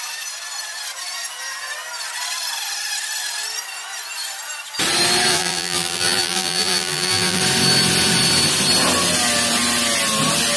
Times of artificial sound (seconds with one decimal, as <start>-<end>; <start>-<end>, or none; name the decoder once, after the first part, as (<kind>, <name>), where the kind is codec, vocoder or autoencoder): 5.3-7.4 (vocoder, BigVGAN v2)